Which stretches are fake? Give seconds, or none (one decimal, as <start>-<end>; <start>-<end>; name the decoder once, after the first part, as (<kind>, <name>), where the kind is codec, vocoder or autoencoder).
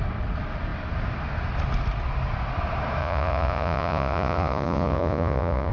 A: 3.0-5.7 (vocoder, Vocos)